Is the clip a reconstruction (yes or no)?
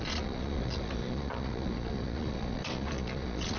yes